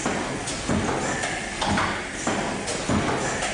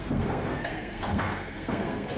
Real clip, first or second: first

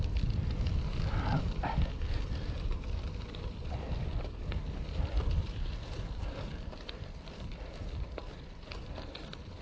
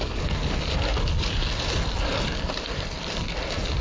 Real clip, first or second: second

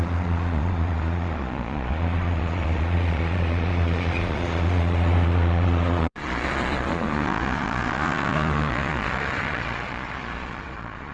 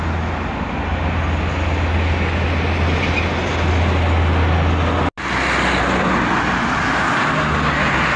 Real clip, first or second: second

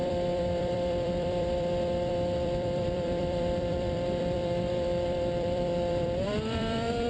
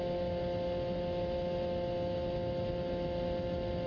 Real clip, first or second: second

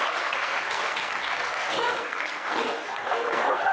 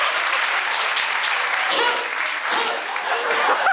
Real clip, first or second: second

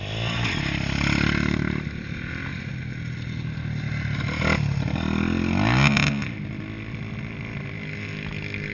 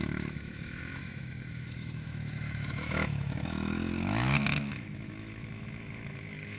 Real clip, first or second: first